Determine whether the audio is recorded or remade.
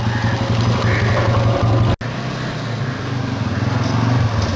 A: recorded